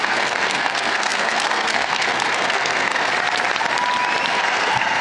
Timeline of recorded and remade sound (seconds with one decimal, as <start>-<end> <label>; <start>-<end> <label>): 0.0-3.1 remade; 3.1-4.3 recorded; 4.3-5.0 remade